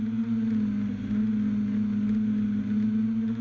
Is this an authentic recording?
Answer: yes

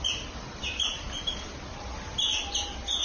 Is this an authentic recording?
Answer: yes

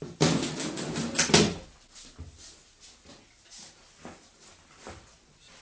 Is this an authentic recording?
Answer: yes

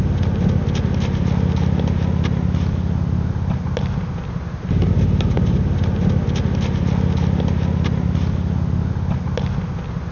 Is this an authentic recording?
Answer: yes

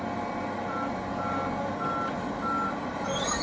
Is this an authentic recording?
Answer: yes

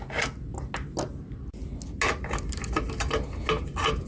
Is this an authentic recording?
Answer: yes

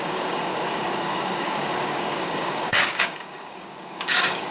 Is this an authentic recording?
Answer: no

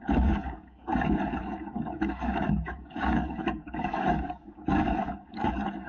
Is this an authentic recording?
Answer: no